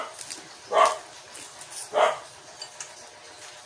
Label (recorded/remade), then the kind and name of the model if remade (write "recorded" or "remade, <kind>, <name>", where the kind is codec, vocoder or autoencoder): recorded